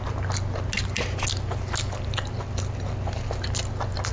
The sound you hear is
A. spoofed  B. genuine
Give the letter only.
B